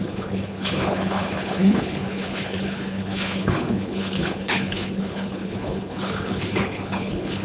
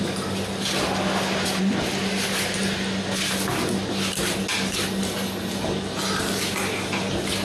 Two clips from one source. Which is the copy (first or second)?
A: first